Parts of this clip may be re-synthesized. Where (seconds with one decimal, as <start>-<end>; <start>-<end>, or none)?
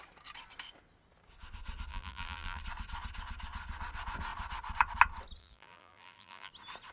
1.9-2.6; 5.4-6.5